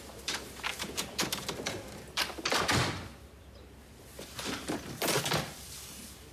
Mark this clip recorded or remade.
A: remade